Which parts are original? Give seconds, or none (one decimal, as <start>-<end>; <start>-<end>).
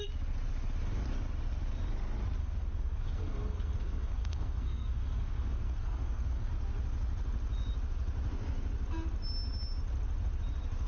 0.0-2.4; 6.5-10.9